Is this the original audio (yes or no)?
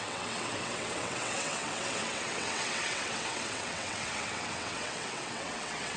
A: no